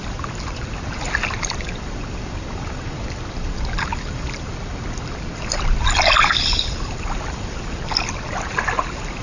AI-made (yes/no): no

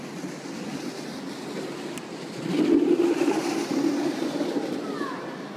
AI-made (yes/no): no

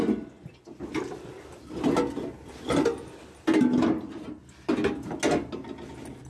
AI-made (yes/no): no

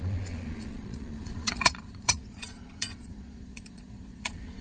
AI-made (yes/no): yes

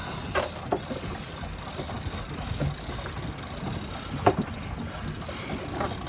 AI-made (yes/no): no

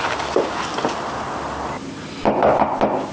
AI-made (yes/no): no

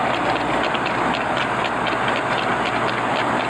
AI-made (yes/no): no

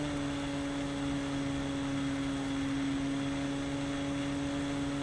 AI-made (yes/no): no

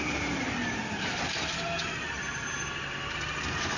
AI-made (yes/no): no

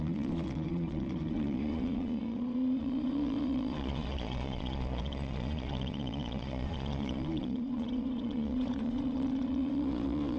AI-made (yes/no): yes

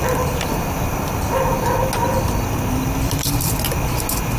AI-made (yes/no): no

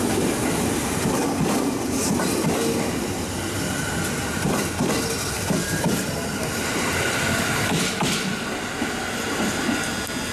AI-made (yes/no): no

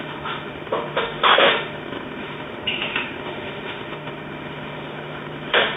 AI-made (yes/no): yes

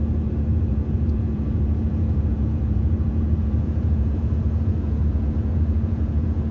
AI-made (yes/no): yes